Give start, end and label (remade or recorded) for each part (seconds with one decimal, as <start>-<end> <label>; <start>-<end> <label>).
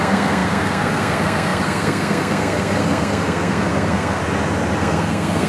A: 0.0-4.2 remade; 4.2-4.8 recorded; 4.8-5.5 remade